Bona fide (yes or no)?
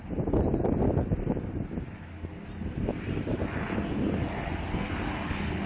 yes